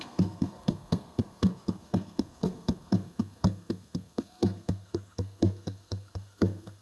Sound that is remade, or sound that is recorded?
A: remade